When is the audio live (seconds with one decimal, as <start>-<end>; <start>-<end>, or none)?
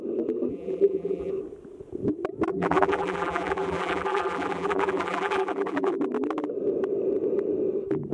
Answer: 0.0-0.5; 1.3-2.5; 5.9-8.1